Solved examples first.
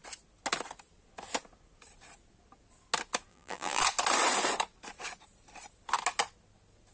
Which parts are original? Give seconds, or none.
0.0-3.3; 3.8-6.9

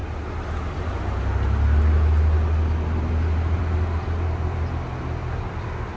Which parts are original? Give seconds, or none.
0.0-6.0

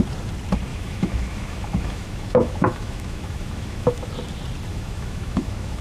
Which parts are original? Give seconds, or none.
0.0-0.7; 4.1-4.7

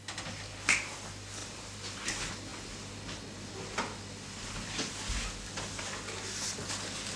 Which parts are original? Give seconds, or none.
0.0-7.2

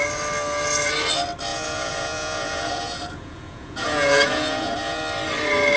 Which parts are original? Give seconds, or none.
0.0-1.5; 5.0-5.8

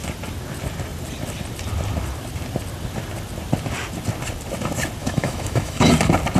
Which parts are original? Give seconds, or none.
0.0-5.0; 5.9-6.4

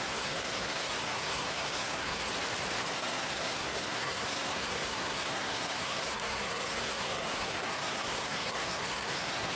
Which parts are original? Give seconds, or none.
2.3-2.9

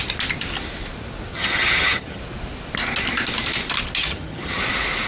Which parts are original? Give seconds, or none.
0.0-1.3; 2.2-4.0; 4.6-5.1